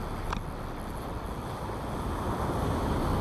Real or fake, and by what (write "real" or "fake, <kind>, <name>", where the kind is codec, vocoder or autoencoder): real